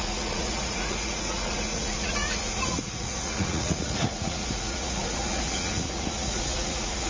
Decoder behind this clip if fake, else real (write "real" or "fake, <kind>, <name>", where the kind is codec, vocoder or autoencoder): fake, vocoder, Vocos